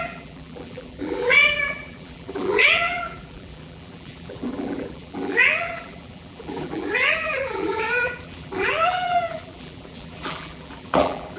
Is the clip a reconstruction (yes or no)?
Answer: yes